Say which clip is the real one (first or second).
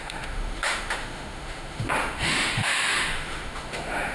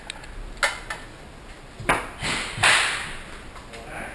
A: second